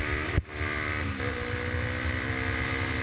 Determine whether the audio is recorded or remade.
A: recorded